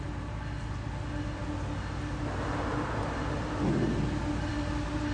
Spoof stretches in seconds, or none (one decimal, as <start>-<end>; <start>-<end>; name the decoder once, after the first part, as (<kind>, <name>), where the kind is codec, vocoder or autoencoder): none